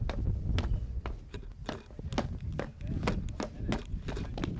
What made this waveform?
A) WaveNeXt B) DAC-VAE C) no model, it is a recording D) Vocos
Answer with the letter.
C